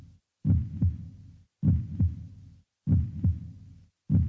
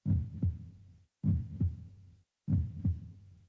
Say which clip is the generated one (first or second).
second